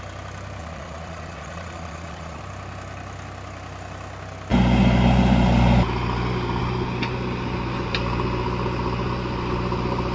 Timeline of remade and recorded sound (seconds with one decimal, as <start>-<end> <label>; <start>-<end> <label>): 0.0-0.6 recorded; 0.6-2.4 remade; 2.4-10.1 recorded